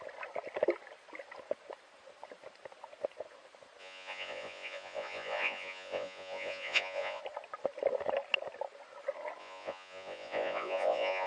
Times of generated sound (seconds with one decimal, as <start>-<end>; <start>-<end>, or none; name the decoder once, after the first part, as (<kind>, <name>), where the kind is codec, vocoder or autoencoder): 3.8-7.2 (vocoder, Vocos); 9.4-11.3